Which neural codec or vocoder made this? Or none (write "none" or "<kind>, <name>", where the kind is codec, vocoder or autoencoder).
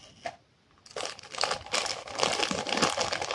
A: none